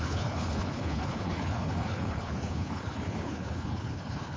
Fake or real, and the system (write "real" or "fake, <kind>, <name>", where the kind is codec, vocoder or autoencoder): fake, codec, HILCodec